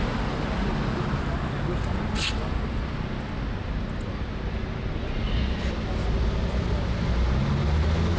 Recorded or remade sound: recorded